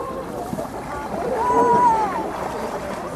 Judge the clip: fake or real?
fake